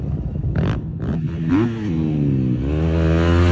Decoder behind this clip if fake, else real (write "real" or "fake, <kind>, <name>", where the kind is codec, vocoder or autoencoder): real